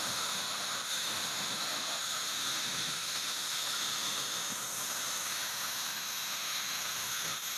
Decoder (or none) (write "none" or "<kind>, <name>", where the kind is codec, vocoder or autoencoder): autoencoder, DAC-VAE